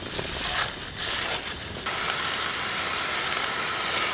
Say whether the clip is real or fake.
real